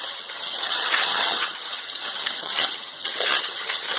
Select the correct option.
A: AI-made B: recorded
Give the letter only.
A